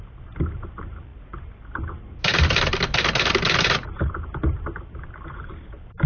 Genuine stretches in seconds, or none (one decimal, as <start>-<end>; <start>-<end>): 0.0-6.1